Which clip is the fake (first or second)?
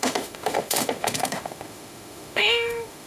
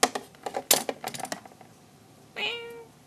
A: first